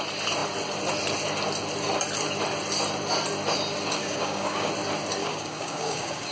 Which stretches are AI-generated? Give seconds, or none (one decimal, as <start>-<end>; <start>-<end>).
4.0-4.7; 5.2-6.3